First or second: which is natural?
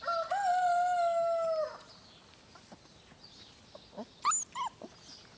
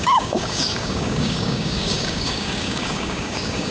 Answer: first